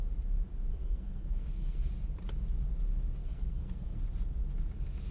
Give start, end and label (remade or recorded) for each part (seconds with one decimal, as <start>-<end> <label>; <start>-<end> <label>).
0.0-0.7 recorded; 0.7-1.9 remade; 1.9-3.2 recorded; 3.2-4.0 remade; 4.0-5.1 recorded